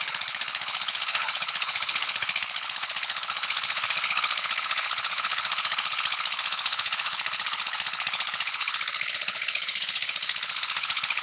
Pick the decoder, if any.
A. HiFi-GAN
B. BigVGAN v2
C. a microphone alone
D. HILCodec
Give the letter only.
D